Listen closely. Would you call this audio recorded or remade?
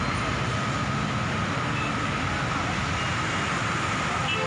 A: recorded